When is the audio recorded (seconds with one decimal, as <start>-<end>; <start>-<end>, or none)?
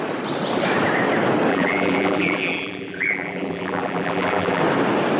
0.0-1.5; 4.6-5.2